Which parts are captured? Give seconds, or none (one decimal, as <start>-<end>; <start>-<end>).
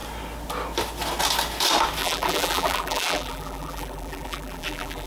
0.0-2.0